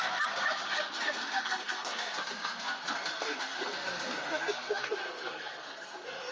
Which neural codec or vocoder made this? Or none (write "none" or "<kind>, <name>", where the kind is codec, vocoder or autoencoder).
codec, SNAC